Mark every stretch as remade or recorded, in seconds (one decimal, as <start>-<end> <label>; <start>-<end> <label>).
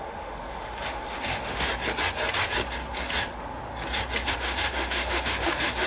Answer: 0.0-1.7 remade; 1.7-4.3 recorded; 4.3-5.9 remade